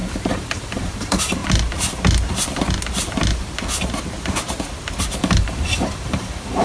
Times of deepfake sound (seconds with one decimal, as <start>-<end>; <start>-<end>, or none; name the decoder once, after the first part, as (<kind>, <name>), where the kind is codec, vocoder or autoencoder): 0.0-1.4 (vocoder, BigVGAN v2); 5.0-6.6